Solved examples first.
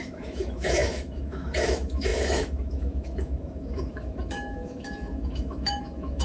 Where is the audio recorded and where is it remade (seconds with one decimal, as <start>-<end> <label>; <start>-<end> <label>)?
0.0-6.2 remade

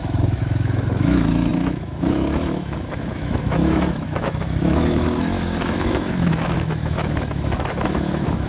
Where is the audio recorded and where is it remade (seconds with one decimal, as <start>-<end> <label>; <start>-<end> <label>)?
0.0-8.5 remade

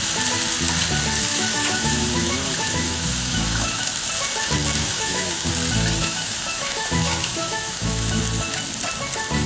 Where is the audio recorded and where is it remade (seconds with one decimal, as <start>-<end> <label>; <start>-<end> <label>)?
0.0-1.3 recorded; 1.3-4.1 remade; 4.1-4.8 recorded; 4.8-5.5 remade; 5.5-6.0 recorded; 6.0-8.2 remade; 8.2-9.5 recorded

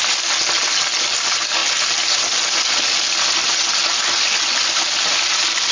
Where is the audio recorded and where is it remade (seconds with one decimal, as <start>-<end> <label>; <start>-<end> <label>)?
0.0-5.7 recorded